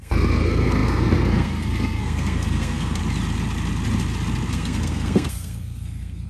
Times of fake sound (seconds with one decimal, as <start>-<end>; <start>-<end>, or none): 0.0-3.0; 4.5-6.3